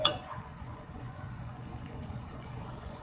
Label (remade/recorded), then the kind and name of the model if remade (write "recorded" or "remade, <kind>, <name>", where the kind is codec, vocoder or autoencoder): remade, vocoder, Vocos